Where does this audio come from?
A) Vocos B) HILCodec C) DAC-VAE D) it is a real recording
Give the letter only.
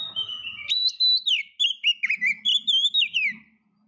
D